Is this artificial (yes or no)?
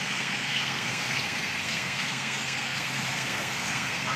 yes